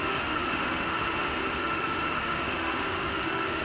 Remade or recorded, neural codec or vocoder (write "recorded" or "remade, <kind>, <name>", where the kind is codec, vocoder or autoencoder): remade, autoencoder, DAC-VAE